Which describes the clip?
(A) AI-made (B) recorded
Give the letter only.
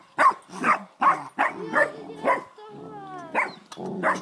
B